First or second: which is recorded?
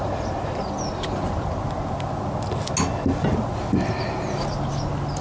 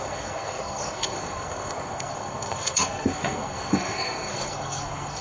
first